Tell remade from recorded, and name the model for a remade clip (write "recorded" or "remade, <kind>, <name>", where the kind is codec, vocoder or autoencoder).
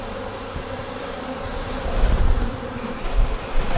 remade, vocoder, BigVGAN v2